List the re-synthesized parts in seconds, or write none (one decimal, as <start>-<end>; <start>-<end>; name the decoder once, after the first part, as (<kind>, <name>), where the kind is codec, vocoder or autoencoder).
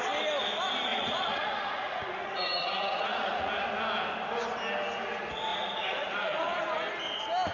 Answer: 0.9-3.5 (vocoder, Vocos); 5.5-6.6